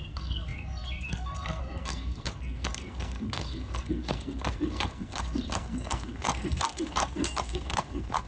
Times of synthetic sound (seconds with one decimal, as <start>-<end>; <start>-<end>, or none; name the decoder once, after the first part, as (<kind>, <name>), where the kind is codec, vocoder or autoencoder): 0.0-8.3 (codec, SNAC)